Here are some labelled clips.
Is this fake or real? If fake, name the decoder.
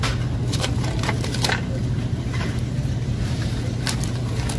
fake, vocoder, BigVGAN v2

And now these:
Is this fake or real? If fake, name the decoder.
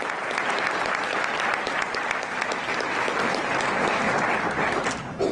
real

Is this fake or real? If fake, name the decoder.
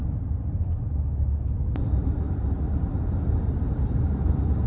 real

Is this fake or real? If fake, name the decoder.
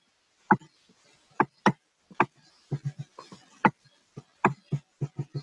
real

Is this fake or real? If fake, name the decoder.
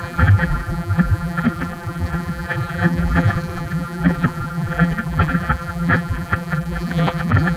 fake, vocoder, BigVGAN v2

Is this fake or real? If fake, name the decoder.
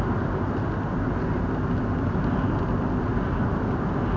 real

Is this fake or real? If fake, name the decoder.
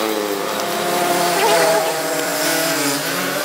fake, vocoder, BigVGAN v2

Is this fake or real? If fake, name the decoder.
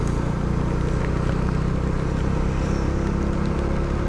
real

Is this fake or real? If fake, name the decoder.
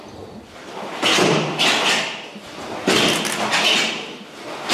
real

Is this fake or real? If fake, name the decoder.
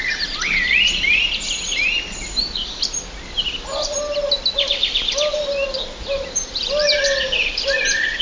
real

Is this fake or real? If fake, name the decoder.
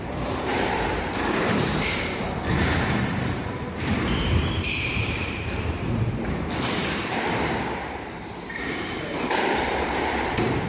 fake, vocoder, BigVGAN v2